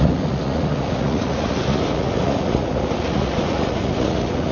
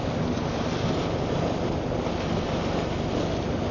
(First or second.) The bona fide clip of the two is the second